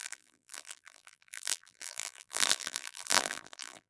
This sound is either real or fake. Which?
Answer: fake